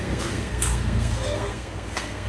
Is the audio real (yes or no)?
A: no